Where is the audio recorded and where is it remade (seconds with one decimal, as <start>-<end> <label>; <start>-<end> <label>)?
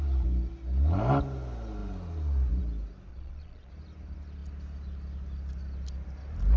0.0-3.1 recorded; 3.1-3.7 remade; 3.7-6.6 recorded